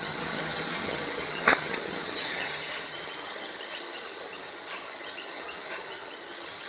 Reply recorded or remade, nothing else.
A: remade